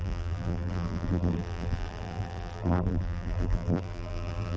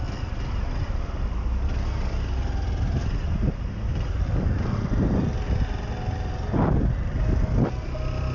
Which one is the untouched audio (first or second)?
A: second